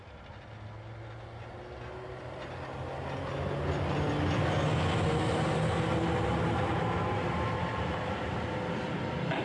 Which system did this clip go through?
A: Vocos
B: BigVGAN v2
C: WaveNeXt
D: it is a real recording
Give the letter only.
D